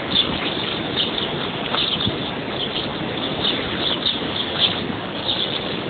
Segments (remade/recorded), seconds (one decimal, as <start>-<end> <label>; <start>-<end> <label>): 0.0-0.7 remade; 0.7-2.3 recorded; 2.3-2.9 remade; 2.9-4.2 recorded; 4.2-5.9 remade